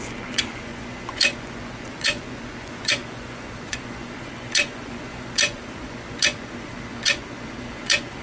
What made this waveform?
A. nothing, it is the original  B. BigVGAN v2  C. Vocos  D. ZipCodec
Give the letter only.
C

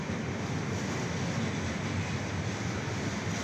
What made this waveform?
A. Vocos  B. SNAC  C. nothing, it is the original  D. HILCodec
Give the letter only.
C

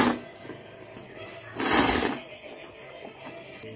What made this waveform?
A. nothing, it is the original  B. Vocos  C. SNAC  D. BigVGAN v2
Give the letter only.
A